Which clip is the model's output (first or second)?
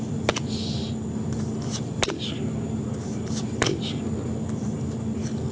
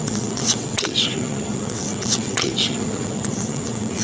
second